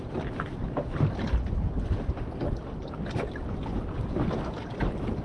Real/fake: real